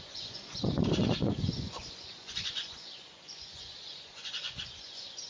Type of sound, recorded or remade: remade